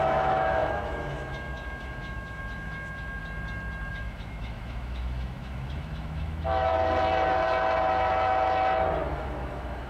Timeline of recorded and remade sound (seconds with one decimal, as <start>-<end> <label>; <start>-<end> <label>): 0.0-3.2 remade; 3.2-3.9 recorded; 3.9-6.7 remade; 6.7-9.1 recorded; 9.1-9.9 remade